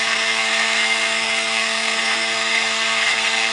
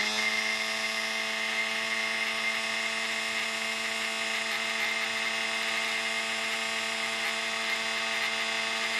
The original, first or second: second